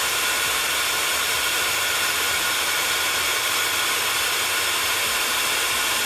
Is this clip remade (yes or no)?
no